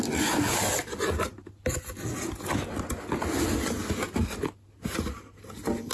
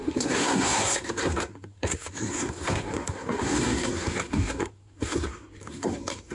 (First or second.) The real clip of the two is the first